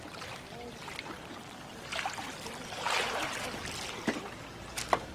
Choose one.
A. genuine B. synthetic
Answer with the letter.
A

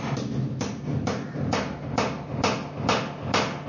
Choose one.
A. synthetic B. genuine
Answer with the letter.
B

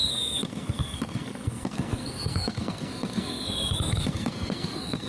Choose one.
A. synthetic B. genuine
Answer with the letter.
A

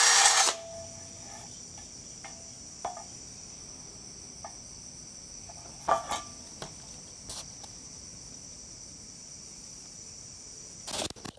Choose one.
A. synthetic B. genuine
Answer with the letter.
B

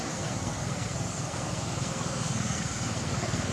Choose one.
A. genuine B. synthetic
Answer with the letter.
B